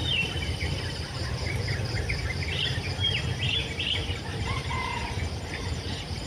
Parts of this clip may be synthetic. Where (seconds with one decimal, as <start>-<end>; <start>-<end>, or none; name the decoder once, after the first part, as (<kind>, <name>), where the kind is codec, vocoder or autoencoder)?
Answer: 0.0-6.3 (vocoder, BigVGAN v2)